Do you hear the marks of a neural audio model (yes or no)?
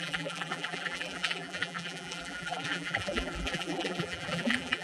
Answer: yes